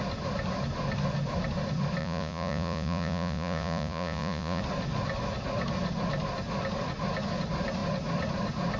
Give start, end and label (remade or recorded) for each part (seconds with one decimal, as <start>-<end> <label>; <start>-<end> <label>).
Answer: 0.0-2.0 recorded; 2.0-4.6 remade; 4.6-8.8 recorded